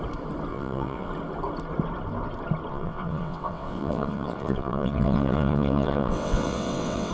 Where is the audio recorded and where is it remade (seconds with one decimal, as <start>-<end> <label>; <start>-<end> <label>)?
0.0-0.5 recorded; 0.5-1.1 remade; 1.1-2.7 recorded; 2.7-7.1 remade